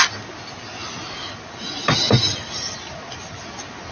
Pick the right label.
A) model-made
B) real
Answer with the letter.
B